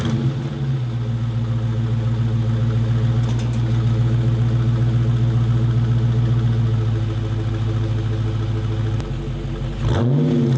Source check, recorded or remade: recorded